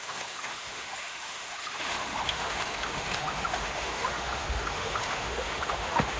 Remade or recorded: remade